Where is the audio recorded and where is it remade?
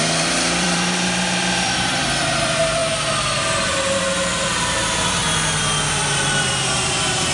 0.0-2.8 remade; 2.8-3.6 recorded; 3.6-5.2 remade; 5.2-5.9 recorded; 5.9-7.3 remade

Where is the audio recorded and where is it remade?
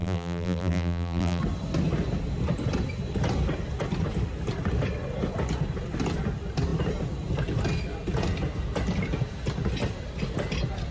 0.0-1.4 remade; 1.4-10.9 recorded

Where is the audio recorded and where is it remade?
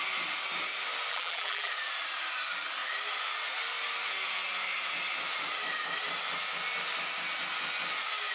0.0-1.1 recorded; 1.1-1.7 remade; 1.7-8.3 recorded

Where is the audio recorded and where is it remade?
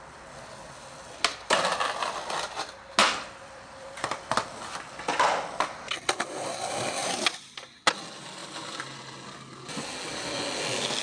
0.0-3.0 recorded; 3.0-4.5 remade; 4.5-7.0 recorded; 7.0-7.6 remade; 7.6-8.4 recorded; 8.4-9.0 remade; 9.0-11.0 recorded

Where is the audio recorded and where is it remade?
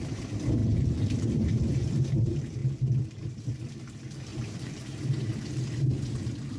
0.0-6.6 remade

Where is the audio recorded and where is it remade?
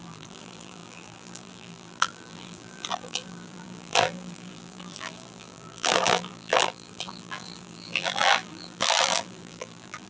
0.0-10.1 remade